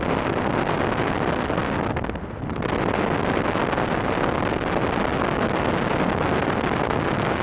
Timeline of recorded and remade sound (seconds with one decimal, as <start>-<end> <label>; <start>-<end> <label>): 0.0-7.4 recorded